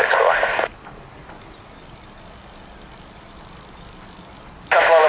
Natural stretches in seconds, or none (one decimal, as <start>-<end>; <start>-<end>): 0.0-5.1